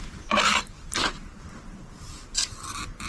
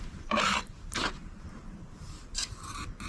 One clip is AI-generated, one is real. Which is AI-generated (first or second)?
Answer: second